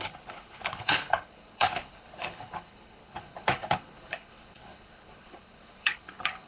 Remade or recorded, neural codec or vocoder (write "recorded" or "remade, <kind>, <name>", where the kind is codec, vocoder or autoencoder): remade, codec, HILCodec